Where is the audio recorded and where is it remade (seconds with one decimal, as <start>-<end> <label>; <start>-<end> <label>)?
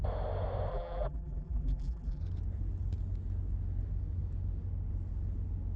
0.0-0.7 recorded; 0.7-2.2 remade; 2.2-5.8 recorded